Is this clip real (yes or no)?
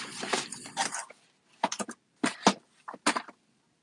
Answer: yes